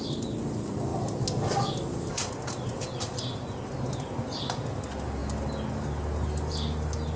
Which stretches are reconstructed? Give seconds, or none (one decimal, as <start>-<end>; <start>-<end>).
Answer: none